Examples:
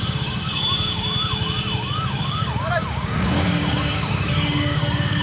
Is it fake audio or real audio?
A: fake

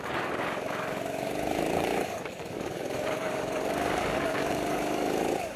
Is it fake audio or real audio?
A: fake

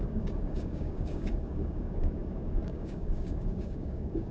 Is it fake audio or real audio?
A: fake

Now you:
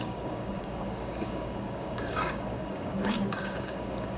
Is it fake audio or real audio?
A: fake